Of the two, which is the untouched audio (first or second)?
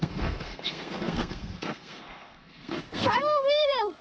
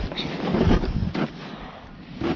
second